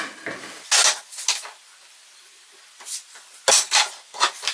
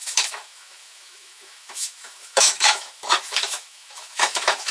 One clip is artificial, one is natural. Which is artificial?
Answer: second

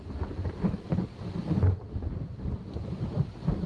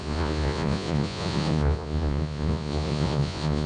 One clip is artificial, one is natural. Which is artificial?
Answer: second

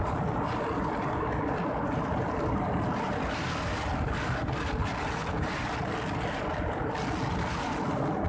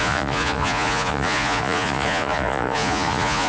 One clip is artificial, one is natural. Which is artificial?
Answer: second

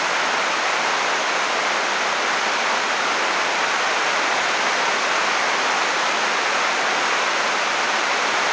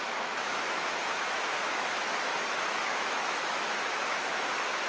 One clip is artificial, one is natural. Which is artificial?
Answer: second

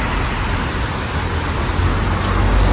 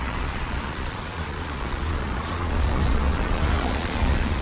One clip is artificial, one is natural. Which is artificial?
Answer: second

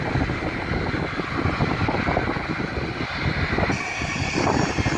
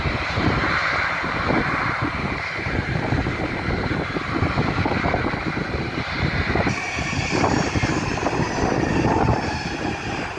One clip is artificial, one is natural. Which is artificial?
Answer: second